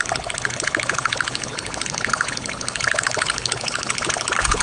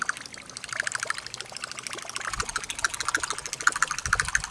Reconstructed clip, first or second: first